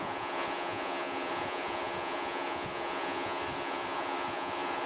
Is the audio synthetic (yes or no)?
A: yes